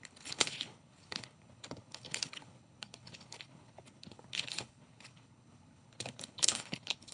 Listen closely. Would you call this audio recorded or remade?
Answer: remade